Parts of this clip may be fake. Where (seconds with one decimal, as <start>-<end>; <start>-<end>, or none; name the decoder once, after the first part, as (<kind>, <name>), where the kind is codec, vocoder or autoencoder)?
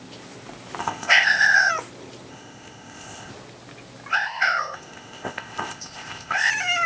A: 0.8-1.7 (codec, ZipCodec); 2.3-3.3; 4.1-6.5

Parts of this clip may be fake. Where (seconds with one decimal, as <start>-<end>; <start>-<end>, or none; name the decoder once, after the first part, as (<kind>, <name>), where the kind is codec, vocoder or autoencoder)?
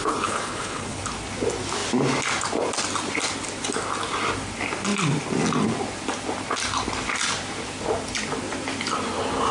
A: 0.0-1.0 (codec, HILCodec)